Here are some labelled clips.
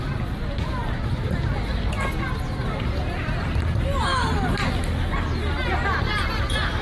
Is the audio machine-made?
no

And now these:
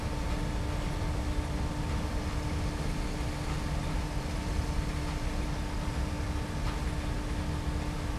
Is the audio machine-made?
no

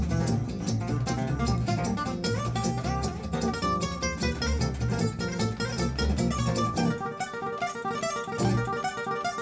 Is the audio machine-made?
no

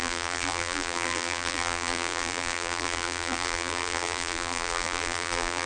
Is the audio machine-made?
yes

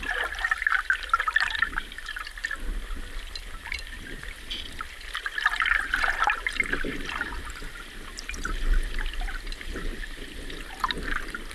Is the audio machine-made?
no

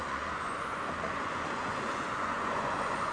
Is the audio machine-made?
yes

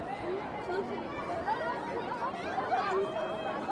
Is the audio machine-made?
no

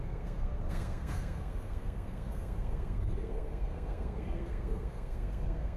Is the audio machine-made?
yes